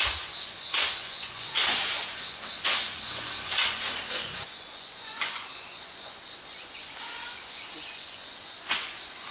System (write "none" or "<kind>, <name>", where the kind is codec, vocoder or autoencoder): vocoder, Vocos